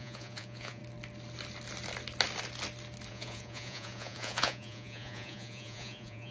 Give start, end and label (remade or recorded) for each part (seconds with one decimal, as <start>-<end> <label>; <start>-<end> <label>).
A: 0.0-0.8 remade; 0.8-3.1 recorded; 3.1-6.3 remade